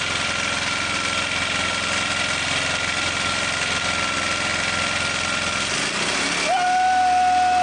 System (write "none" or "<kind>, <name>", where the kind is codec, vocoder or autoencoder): none